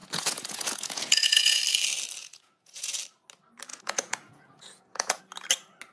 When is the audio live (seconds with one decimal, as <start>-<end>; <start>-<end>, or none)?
1.6-2.2; 3.0-3.7; 5.2-5.9